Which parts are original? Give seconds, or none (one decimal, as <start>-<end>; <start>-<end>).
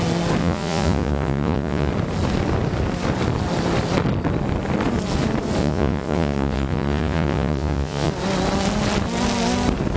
0.0-0.4; 1.9-5.6; 8.1-10.0